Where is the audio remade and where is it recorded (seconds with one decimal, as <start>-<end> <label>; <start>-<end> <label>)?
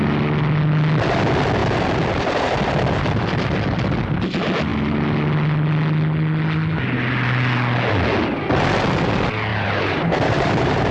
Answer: 0.0-9.5 recorded; 9.5-10.9 remade